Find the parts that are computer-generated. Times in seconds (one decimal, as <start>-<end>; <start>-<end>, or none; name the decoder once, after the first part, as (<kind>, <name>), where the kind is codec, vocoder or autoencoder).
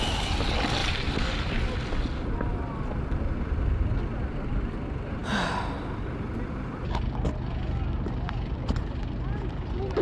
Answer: 0.8-1.5 (vocoder, BigVGAN v2)